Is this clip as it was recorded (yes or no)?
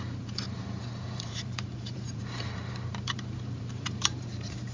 no